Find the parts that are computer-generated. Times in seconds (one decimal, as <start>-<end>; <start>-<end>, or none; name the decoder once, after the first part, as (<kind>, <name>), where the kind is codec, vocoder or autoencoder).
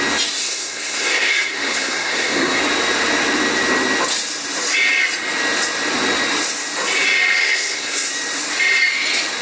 0.4-2.6 (codec, SNAC); 7.4-8.1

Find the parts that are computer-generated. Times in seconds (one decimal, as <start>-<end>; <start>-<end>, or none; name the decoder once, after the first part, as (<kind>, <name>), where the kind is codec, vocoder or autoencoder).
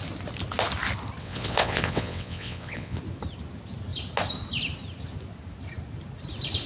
1.2-3.0 (vocoder, WaveNeXt)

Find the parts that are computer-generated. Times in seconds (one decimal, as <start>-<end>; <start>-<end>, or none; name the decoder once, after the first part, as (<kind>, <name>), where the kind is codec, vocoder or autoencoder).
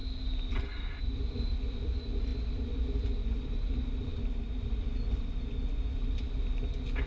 none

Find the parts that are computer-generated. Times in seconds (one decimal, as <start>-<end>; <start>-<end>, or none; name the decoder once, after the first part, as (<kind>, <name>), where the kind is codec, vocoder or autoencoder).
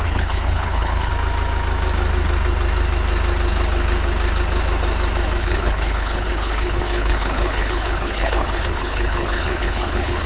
0.0-1.1 (codec, HILCodec); 5.4-10.3